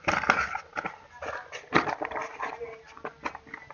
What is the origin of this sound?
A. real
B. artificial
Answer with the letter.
A